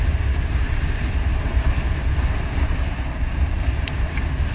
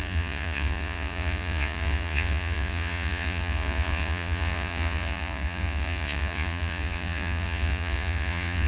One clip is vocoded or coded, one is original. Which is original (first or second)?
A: first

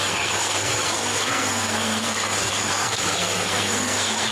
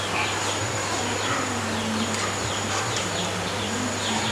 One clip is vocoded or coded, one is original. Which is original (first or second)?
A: second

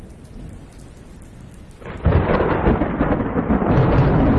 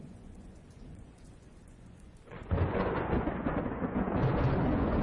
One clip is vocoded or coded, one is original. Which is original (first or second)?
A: first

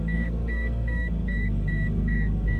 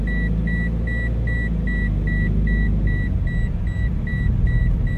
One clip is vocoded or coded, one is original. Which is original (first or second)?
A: second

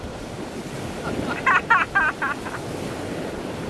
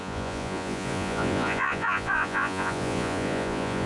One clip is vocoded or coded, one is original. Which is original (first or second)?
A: first